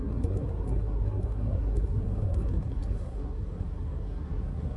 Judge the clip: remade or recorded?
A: remade